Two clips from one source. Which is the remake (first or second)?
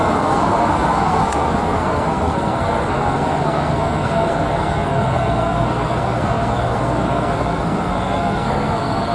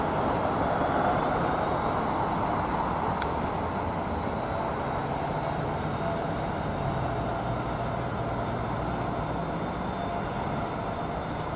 first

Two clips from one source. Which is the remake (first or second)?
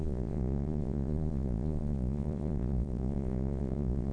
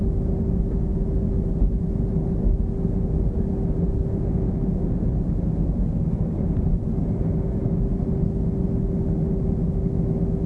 first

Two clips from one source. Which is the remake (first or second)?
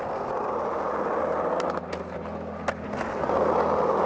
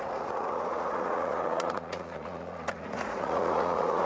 second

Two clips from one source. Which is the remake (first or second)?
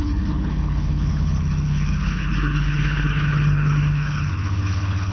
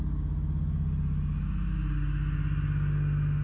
first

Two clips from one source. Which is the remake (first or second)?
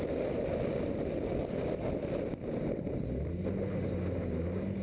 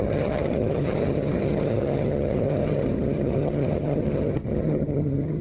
second